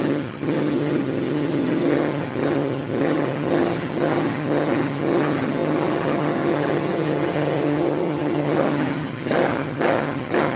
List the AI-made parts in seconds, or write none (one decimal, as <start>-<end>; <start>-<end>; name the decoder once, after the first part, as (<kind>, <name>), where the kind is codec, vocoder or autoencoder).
0.0-10.6 (vocoder, HiFi-GAN)